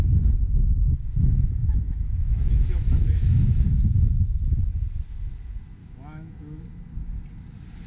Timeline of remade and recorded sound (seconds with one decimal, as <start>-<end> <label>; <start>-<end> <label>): 0.0-1.6 recorded; 1.6-4.4 remade; 4.4-5.8 recorded; 5.8-6.6 remade; 6.6-7.9 recorded